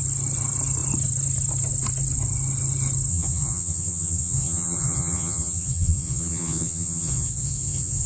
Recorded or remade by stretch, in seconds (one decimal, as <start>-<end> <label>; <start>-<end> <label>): 0.0-3.1 recorded; 3.1-8.1 remade